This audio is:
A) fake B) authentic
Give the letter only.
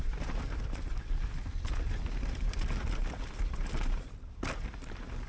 B